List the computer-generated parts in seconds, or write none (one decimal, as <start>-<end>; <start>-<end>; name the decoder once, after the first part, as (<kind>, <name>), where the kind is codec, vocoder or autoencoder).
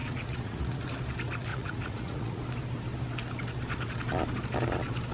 0.0-0.8 (vocoder, Vocos); 1.5-2.4